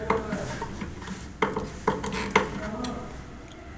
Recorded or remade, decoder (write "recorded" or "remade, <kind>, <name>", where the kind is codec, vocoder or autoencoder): recorded